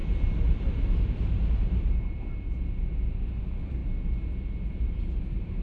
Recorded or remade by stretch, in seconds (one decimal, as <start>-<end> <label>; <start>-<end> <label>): 0.0-5.6 recorded

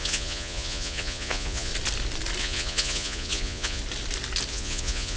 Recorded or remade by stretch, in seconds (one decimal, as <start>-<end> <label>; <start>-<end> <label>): 0.0-1.7 remade; 1.7-2.4 recorded; 2.4-3.8 remade; 3.8-4.5 recorded; 4.5-5.2 remade

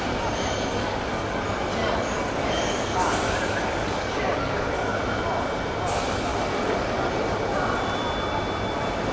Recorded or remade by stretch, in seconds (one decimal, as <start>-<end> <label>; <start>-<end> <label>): 0.0-0.8 recorded; 0.8-1.4 remade; 1.4-1.8 recorded; 1.8-5.0 remade; 5.0-6.3 recorded; 6.3-7.0 remade; 7.0-9.1 recorded

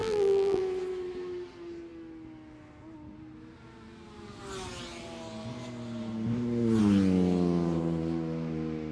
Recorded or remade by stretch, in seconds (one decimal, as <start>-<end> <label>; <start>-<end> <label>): 0.0-0.6 remade; 0.6-8.9 recorded